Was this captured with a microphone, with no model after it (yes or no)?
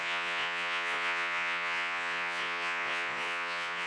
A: no